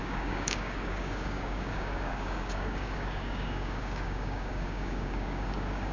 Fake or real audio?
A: fake